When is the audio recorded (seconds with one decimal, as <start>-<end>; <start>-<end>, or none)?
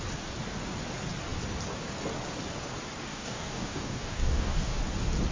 0.0-3.1; 4.8-5.3